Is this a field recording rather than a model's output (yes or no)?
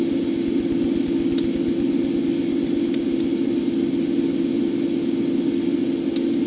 yes